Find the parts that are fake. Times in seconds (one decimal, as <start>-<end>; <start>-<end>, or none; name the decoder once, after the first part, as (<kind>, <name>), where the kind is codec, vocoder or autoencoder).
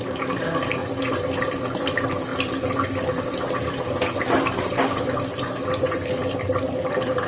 none